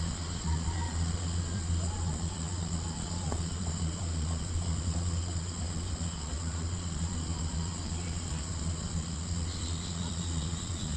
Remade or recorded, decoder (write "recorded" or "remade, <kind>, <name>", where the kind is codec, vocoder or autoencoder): remade, vocoder, Vocos